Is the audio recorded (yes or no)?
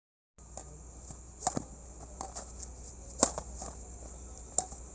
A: yes